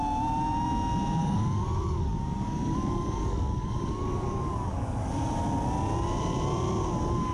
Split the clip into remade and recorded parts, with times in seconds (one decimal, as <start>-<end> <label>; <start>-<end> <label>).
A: 0.0-1.2 recorded; 1.2-5.1 remade; 5.1-7.3 recorded

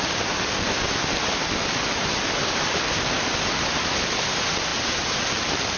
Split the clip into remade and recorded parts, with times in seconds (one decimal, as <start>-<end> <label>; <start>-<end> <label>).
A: 0.0-5.8 recorded

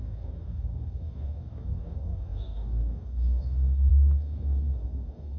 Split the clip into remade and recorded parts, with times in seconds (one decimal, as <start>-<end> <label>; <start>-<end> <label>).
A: 0.0-5.4 remade